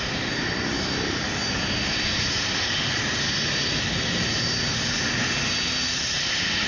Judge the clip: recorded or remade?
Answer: recorded